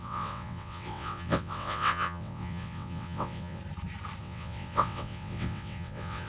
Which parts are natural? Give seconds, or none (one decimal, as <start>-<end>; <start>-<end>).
3.6-4.2